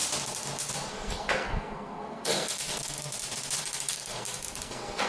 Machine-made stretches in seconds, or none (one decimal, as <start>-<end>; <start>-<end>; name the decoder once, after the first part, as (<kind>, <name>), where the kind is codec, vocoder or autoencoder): 0.9-3.1 (codec, SNAC); 3.6-5.1